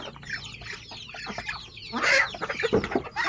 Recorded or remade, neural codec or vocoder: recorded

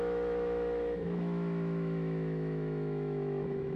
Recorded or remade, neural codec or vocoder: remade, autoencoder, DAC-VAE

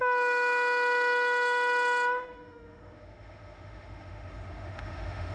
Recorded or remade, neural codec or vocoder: remade, autoencoder, DAC-VAE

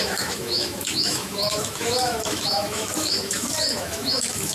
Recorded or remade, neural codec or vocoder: remade, autoencoder, DAC-VAE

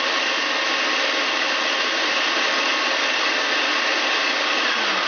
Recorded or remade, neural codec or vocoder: recorded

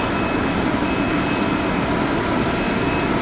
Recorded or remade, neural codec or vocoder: recorded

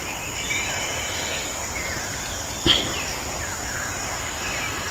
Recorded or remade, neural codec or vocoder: recorded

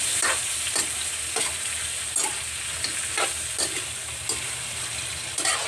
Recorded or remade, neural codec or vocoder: recorded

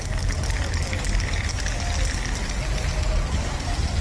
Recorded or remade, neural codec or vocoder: recorded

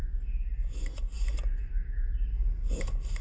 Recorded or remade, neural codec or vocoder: recorded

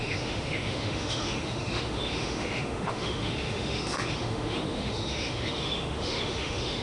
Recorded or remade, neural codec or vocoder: remade, autoencoder, DAC-VAE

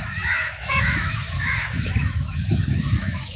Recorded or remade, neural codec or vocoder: remade, autoencoder, DAC-VAE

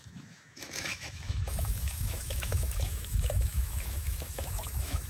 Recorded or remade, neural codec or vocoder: remade, autoencoder, DAC-VAE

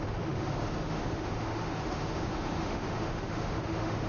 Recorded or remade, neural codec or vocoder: remade, autoencoder, DAC-VAE